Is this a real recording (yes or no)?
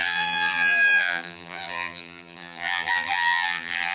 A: no